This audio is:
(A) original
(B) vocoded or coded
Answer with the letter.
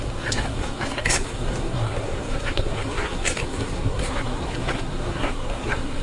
B